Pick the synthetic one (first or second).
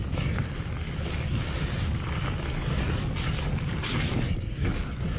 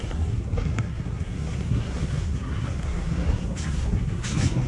second